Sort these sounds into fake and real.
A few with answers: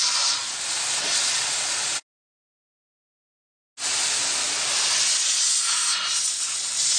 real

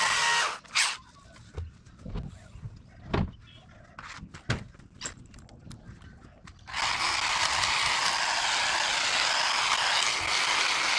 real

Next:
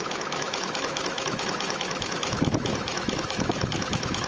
fake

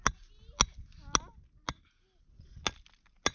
real